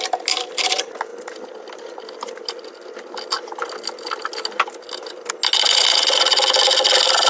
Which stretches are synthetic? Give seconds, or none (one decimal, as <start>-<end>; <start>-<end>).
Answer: none